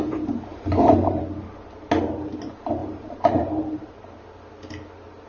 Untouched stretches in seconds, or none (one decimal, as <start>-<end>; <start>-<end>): 0.0-0.5; 1.2-2.8; 4.0-5.3